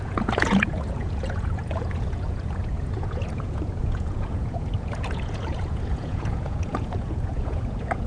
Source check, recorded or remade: remade